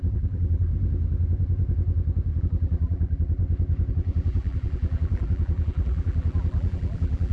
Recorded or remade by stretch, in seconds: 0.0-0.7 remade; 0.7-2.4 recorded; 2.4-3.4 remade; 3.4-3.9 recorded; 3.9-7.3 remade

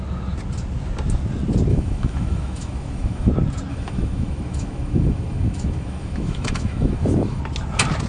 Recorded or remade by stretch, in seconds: 0.0-1.7 recorded; 1.7-3.3 remade; 3.3-3.7 recorded; 3.7-7.4 remade; 7.4-8.1 recorded

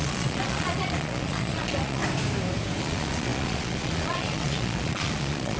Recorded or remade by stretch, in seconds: 0.0-2.0 remade; 2.0-2.8 recorded; 2.8-5.6 remade

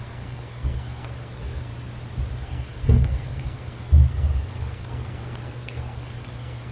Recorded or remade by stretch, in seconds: 0.0-1.7 remade; 1.7-2.4 recorded; 2.4-6.7 remade